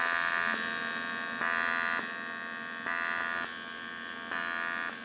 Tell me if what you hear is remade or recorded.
recorded